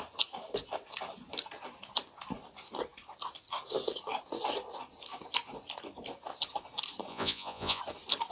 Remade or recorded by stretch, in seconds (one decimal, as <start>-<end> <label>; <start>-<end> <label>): 0.0-7.1 recorded; 7.1-7.8 remade; 7.8-8.3 recorded